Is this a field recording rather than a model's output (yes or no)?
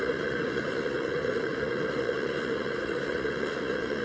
no